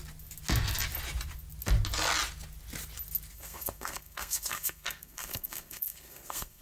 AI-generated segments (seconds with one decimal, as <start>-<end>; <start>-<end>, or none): 3.3-6.6